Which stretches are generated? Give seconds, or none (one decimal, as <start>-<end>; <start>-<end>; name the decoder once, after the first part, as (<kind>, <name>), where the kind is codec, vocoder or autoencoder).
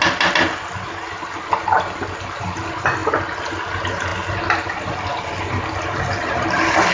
none